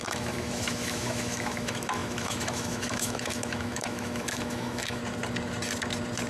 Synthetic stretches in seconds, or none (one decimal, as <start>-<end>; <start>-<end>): 0.0-5.0